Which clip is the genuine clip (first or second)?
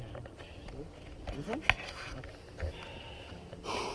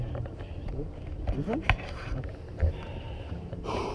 first